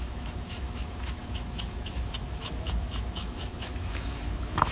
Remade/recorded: remade